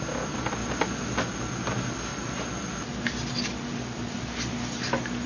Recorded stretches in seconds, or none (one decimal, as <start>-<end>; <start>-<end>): 0.0-5.3